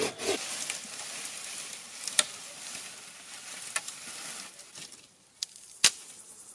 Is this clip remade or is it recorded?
recorded